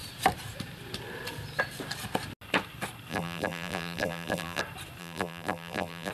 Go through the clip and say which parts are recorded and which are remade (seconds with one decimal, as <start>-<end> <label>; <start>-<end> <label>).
0.0-3.1 recorded; 3.1-4.6 remade; 4.6-5.0 recorded; 5.0-6.1 remade